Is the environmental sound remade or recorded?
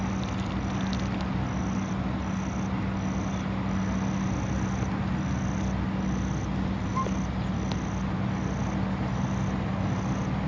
recorded